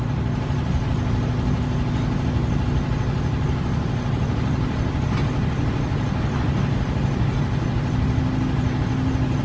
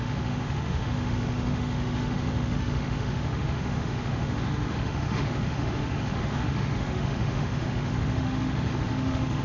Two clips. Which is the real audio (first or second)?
first